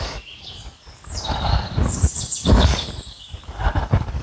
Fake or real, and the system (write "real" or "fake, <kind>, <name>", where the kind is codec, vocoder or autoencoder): fake, codec, DAC